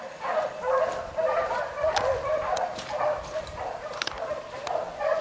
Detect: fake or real real